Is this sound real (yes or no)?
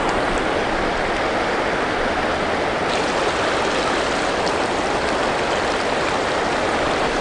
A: yes